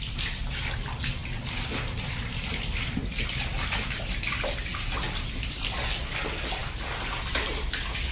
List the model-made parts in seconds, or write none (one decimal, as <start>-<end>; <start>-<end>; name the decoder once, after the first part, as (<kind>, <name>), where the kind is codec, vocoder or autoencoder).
none